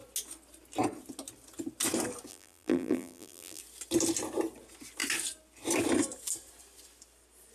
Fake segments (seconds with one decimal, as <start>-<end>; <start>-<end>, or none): 2.3-3.6